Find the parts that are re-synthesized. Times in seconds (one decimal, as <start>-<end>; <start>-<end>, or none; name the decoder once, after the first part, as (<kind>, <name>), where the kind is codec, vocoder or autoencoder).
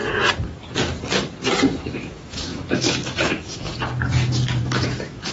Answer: 1.8-3.7 (autoencoder, DAC-VAE); 4.6-5.3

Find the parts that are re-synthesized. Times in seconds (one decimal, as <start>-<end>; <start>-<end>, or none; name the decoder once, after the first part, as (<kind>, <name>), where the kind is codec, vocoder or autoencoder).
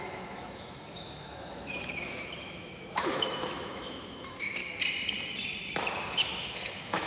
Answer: 0.0-4.6 (autoencoder, DAC-VAE); 6.1-7.1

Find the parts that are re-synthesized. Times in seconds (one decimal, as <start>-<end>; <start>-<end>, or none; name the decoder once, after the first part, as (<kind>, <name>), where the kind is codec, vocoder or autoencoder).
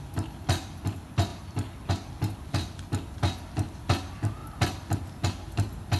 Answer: none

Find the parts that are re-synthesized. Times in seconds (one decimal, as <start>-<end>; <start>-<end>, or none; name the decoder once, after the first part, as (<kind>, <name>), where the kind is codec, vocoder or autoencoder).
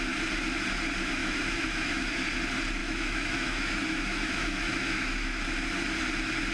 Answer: 1.2-2.1 (autoencoder, DAC-VAE); 2.8-5.4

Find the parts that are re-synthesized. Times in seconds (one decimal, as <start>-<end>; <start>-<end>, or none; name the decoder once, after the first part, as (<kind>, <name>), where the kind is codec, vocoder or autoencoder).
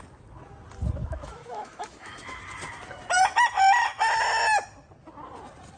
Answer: 1.0-2.4 (autoencoder, DAC-VAE)